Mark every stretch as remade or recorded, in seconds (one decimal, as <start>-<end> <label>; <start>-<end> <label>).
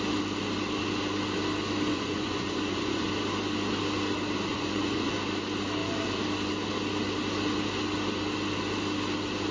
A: 0.0-1.9 recorded; 1.9-3.1 remade; 3.1-4.5 recorded; 4.5-5.1 remade; 5.1-9.5 recorded